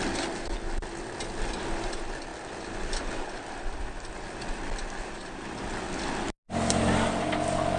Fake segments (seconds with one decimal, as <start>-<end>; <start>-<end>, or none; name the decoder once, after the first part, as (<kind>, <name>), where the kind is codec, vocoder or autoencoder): none